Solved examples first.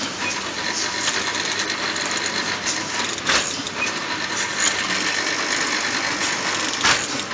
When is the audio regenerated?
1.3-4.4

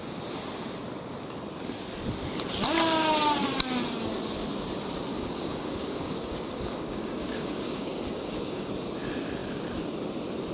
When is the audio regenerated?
5.1-8.7

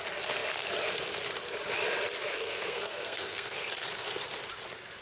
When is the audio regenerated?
2.3-3.7

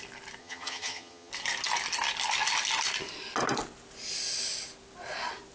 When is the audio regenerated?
0.4-1.3